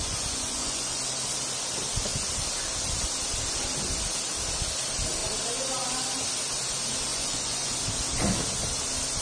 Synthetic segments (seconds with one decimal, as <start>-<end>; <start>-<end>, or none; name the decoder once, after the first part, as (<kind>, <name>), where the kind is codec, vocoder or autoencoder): 0.0-1.0 (vocoder, Vocos); 7.1-7.7